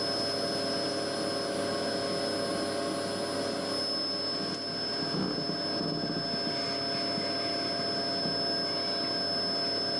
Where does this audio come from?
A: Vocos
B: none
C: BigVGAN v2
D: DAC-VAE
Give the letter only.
B